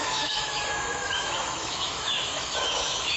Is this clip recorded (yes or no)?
no